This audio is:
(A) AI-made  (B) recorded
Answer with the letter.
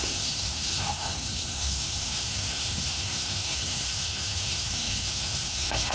A